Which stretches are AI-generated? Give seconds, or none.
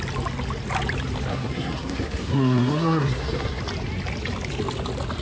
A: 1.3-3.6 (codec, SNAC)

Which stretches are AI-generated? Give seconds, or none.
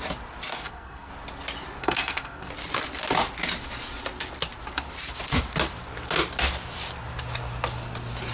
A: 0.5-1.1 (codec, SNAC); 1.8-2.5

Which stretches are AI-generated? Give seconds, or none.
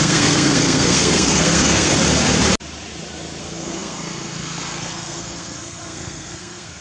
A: 0.0-1.9 (codec, SNAC); 3.4-6.8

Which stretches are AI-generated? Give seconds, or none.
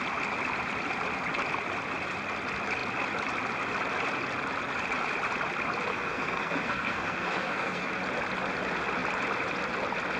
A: 5.9-7.9 (codec, SNAC)